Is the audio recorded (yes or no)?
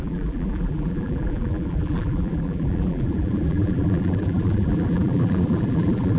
no